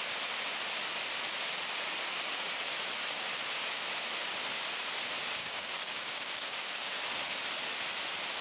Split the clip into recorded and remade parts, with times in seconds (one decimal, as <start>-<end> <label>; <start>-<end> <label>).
0.0-5.4 recorded; 5.4-6.9 remade; 6.9-8.4 recorded